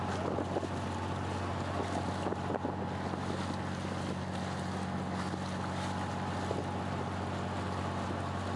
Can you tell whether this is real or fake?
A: real